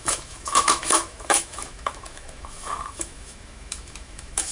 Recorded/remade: remade